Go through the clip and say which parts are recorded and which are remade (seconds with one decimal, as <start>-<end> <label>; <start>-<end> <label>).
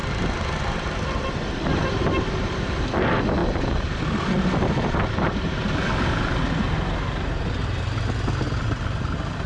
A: 0.0-2.2 remade; 2.2-3.4 recorded; 3.4-5.1 remade; 5.1-9.5 recorded